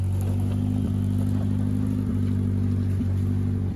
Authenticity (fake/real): real